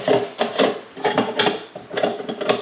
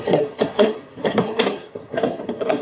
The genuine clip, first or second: first